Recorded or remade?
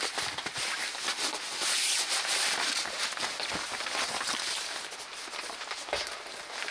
recorded